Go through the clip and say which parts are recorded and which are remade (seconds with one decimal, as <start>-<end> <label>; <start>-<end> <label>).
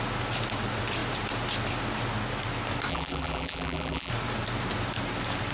0.0-2.9 recorded; 2.9-4.1 remade; 4.1-5.5 recorded